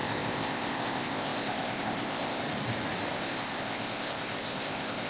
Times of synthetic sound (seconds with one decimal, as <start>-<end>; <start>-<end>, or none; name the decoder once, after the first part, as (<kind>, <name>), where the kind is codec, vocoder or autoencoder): 0.0-2.4 (codec, ZipCodec); 3.1-5.1